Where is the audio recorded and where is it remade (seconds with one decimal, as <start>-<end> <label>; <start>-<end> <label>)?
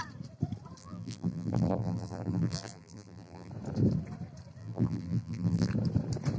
0.0-0.8 recorded; 0.8-3.5 remade; 3.5-4.6 recorded; 4.6-5.7 remade; 5.7-6.4 recorded